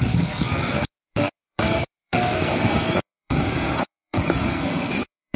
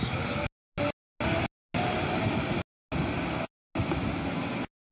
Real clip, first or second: second